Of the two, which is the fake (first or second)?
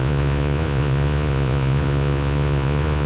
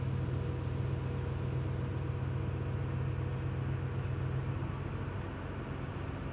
first